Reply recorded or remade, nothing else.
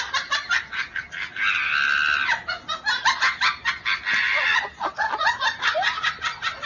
recorded